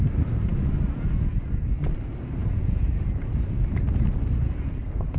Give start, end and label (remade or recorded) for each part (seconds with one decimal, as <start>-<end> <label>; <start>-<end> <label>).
0.0-5.2 recorded